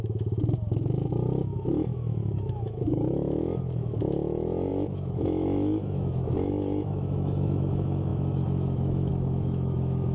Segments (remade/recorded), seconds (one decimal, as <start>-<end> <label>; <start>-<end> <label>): 0.0-10.1 remade